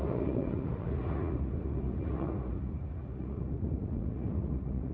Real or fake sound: fake